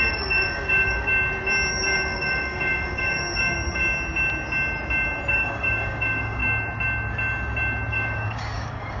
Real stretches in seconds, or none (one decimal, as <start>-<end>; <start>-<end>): 1.1-1.7; 3.8-5.3; 6.4-7.9